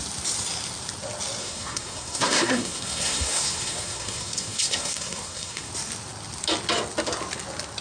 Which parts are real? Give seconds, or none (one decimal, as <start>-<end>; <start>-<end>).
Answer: 0.0-1.4; 5.7-7.8